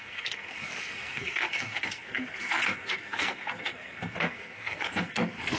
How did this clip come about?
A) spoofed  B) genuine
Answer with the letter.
A